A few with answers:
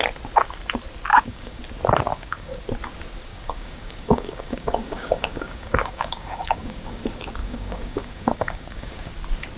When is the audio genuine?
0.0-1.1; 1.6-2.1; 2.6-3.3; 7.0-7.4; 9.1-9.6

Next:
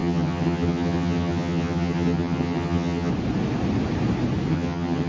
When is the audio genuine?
3.1-4.5

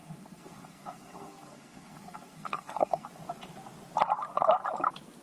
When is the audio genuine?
3.1-5.2

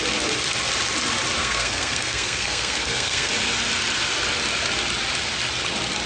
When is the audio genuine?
0.0-1.4; 3.3-6.1

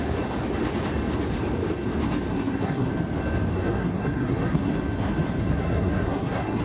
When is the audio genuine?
0.0-2.3; 2.9-3.5; 4.7-5.4

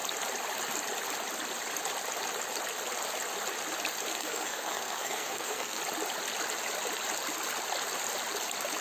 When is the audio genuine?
0.0-4.1; 5.8-8.8

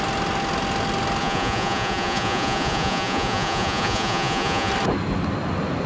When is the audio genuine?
0.0-1.2; 4.7-5.9